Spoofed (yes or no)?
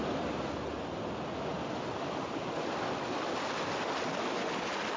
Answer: no